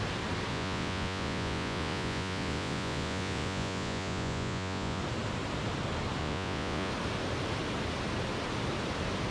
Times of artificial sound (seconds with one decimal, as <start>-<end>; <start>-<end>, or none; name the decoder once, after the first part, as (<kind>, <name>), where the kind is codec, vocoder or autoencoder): 0.5-5.0 (vocoder, Vocos); 6.2-6.9